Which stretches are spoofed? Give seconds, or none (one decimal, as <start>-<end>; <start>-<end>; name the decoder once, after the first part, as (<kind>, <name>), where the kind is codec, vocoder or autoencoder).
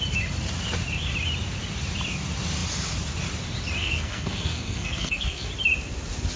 3.8-5.5 (codec, SNAC)